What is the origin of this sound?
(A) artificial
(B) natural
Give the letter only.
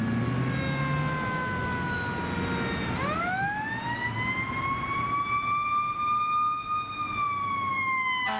B